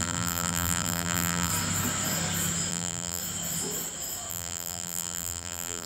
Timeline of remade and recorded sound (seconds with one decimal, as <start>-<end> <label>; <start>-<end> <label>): 0.0-1.5 remade; 1.5-2.7 recorded; 2.7-3.2 remade; 3.2-4.3 recorded; 4.3-5.9 remade